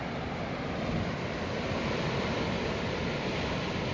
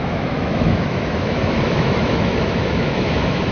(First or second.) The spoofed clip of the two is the second